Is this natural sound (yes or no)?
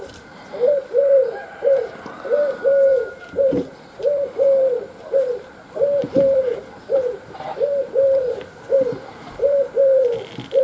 no